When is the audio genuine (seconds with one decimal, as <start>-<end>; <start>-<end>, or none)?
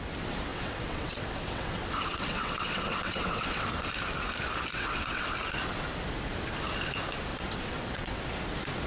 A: 0.0-0.5; 3.7-4.7; 5.3-7.3; 8.2-8.9